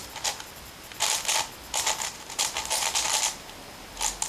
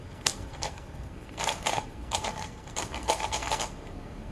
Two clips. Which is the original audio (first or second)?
first